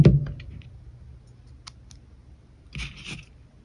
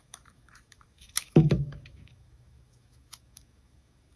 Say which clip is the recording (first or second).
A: first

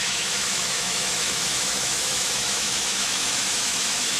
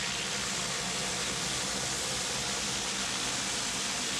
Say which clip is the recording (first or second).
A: second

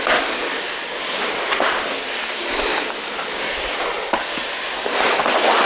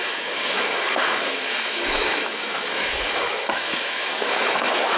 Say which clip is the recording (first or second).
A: first